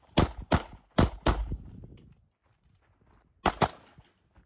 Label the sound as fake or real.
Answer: real